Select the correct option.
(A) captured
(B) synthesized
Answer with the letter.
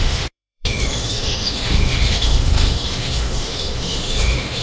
B